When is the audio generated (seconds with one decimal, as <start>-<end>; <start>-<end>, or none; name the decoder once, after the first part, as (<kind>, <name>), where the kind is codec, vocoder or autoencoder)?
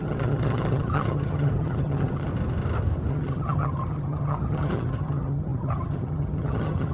0.0-2.3 (vocoder, HiFi-GAN); 3.1-6.9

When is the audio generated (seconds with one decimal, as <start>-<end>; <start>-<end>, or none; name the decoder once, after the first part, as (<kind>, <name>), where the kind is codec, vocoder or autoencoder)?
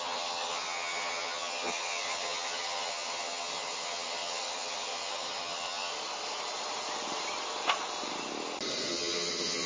0.0-5.9 (vocoder, HiFi-GAN); 8.9-9.7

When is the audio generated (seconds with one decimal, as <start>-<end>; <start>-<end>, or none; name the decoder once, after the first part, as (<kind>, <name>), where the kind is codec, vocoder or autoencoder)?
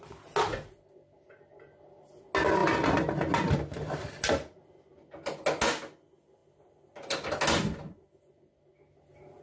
none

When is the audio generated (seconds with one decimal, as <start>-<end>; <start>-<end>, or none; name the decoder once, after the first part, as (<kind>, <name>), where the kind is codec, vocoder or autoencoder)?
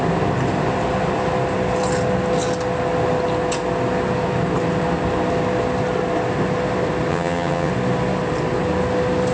7.1-7.7 (vocoder, HiFi-GAN)